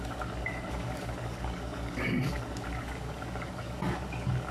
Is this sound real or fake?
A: fake